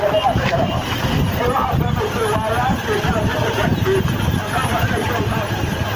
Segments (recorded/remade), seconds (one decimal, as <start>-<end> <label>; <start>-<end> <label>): 0.0-6.0 recorded